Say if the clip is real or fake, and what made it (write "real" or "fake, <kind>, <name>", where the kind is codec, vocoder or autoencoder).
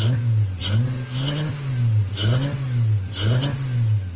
real